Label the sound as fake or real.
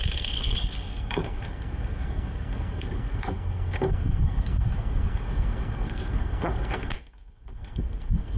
fake